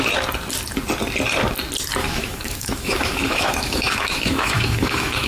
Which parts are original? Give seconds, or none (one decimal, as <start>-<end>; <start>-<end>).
0.0-2.0